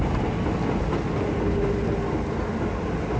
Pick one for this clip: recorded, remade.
recorded